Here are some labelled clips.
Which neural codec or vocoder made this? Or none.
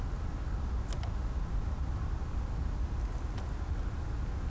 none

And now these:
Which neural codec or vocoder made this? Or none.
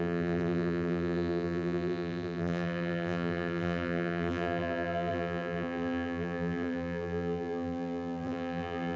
vocoder, BigVGAN v2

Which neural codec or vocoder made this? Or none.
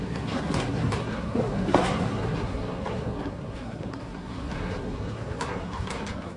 codec, SNAC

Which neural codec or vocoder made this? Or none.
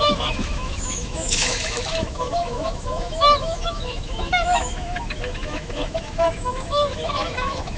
autoencoder, DAC-VAE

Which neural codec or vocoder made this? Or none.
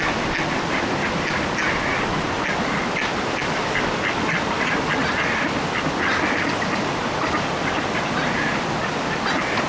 none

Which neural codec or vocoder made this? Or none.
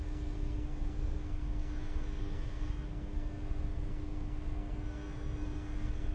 codec, SNAC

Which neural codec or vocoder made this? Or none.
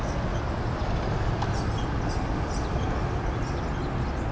none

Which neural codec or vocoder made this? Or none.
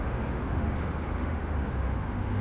autoencoder, DAC-VAE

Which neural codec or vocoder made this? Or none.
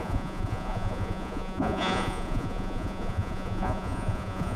vocoder, Vocos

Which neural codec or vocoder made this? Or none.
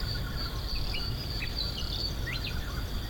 none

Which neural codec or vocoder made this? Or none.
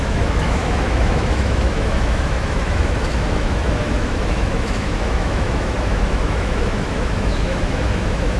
autoencoder, DAC-VAE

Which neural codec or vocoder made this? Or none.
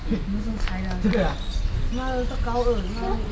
none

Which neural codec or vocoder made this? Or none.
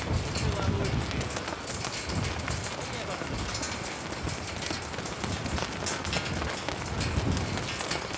none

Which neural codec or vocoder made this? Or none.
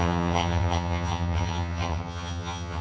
vocoder, HiFi-GAN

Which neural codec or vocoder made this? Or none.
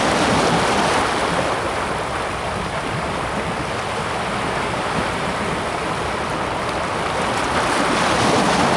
none